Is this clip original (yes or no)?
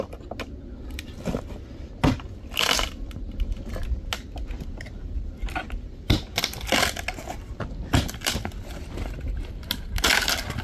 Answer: yes